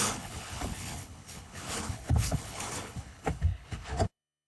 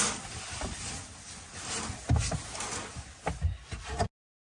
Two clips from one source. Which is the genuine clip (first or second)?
second